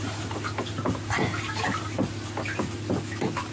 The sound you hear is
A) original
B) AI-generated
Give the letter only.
A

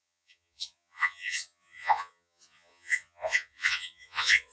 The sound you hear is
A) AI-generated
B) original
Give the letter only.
A